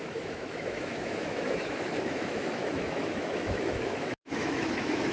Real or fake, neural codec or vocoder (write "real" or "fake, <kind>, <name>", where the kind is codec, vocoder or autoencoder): fake, autoencoder, DAC-VAE